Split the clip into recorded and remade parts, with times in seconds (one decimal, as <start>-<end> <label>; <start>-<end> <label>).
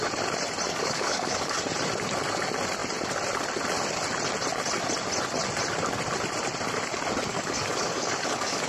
0.0-0.7 recorded; 0.7-1.6 remade; 1.6-7.3 recorded; 7.3-8.7 remade